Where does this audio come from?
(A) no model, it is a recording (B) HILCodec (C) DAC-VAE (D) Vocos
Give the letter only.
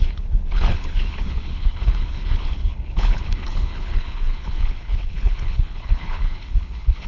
B